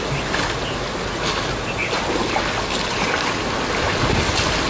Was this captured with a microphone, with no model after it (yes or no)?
yes